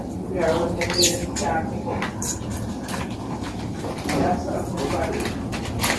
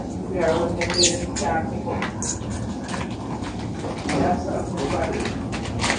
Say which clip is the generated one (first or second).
first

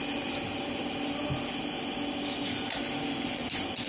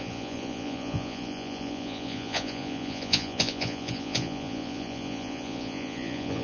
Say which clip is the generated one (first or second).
second